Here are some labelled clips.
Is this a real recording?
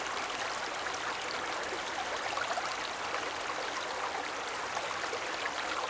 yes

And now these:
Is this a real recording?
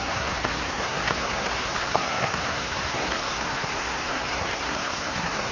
no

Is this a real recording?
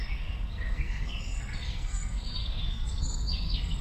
no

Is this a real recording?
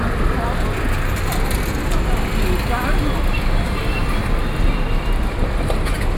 yes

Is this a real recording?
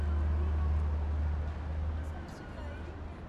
yes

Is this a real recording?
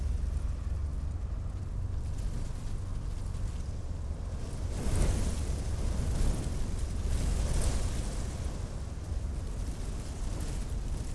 yes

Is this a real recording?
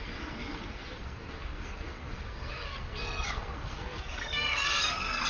no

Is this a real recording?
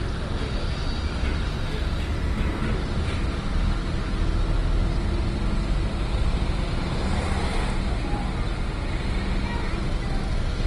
yes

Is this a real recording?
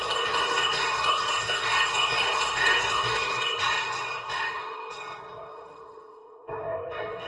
no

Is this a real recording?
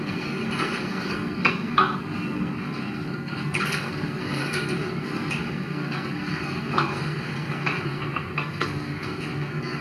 no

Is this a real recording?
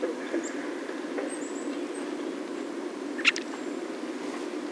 yes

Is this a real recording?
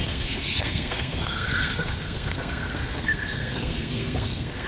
no